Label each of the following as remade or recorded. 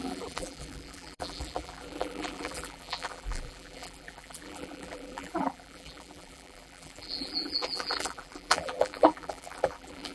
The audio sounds remade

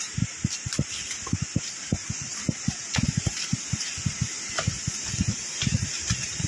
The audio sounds recorded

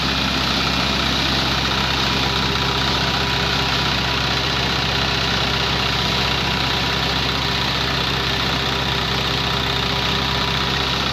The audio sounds recorded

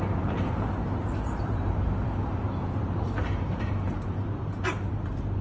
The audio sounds remade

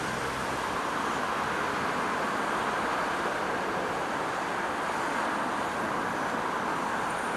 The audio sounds remade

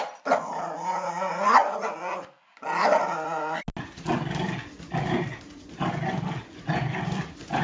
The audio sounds recorded